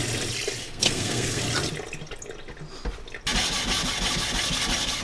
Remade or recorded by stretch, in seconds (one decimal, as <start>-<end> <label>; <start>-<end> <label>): 0.0-0.6 recorded; 0.6-1.4 remade; 1.4-5.0 recorded